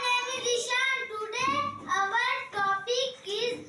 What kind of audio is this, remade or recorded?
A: recorded